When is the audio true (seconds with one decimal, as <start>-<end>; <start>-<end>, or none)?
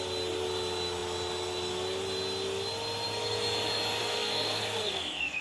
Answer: 0.0-4.0